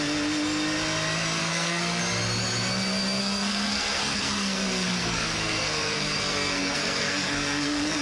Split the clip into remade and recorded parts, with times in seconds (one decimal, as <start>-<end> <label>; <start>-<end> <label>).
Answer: 0.0-1.4 recorded; 1.4-2.0 remade; 2.0-3.2 recorded; 3.2-8.0 remade